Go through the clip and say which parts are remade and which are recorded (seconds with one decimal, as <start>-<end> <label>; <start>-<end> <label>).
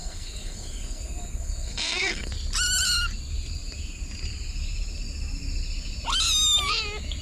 0.0-2.3 remade; 2.3-7.2 recorded